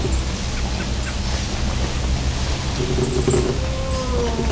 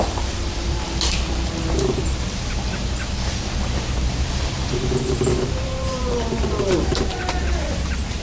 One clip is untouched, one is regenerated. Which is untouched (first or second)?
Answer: first